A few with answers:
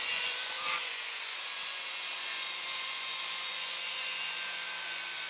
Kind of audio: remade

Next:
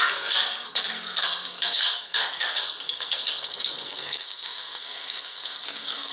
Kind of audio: remade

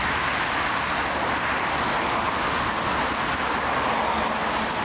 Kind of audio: recorded